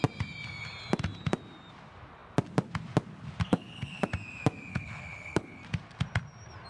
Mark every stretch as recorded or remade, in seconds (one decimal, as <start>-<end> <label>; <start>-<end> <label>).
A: 0.0-3.5 recorded; 3.5-4.1 remade; 4.1-4.7 recorded; 4.7-5.6 remade; 5.6-6.7 recorded